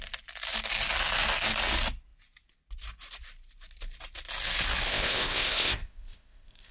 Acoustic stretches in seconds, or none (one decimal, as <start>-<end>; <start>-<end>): 0.0-4.9